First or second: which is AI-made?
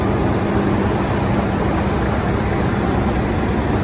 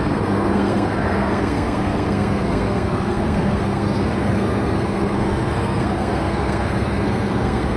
second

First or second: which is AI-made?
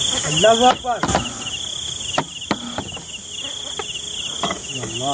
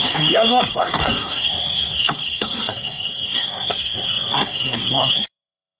second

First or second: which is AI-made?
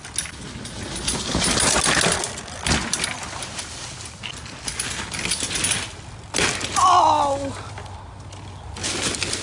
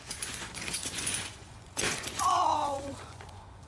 second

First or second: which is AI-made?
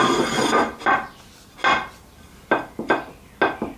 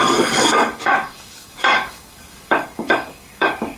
second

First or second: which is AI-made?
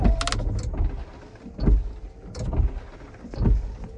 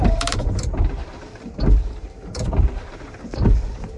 second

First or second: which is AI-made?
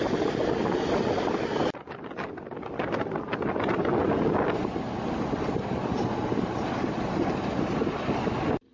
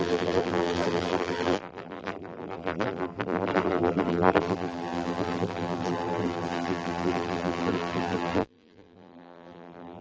second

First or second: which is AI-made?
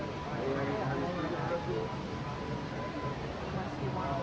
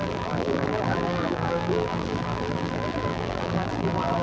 second